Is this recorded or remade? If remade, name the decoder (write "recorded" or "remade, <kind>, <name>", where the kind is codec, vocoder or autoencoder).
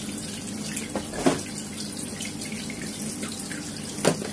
recorded